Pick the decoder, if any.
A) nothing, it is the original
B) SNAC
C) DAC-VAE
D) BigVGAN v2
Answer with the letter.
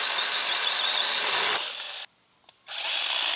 D